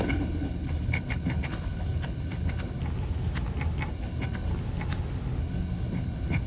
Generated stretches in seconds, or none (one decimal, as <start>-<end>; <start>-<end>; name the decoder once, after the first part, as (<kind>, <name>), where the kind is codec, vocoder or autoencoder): 0.0-2.8 (codec, HILCodec); 3.9-4.5; 5.4-6.5

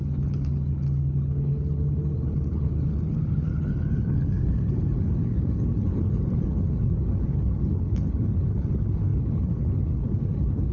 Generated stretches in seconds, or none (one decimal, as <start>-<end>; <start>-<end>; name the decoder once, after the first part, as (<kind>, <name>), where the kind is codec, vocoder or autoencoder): 0.0-10.7 (codec, HILCodec)

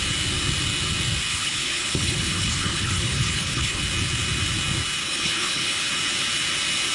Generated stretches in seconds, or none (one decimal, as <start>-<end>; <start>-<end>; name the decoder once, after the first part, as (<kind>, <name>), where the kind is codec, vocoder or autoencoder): 1.3-3.8 (codec, HILCodec); 5.0-5.9

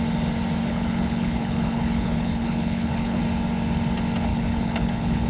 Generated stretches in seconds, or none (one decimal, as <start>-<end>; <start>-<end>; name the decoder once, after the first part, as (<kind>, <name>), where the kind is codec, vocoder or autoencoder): 0.6-3.2 (codec, HILCodec); 4.3-5.3

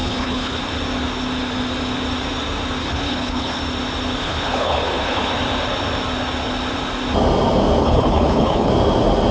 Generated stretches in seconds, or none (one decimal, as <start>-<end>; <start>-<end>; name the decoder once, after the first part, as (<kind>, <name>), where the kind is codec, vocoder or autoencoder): 0.0-0.6 (codec, HILCodec); 2.8-3.6; 4.2-5.3; 7.8-8.7

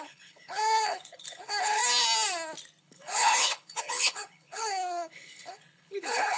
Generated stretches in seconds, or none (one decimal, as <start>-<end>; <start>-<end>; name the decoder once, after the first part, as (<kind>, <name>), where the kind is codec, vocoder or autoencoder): 0.0-1.8 (codec, HILCodec); 2.8-6.4